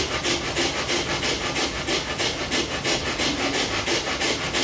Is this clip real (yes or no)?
yes